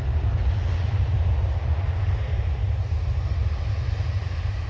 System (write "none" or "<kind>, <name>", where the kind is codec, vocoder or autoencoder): none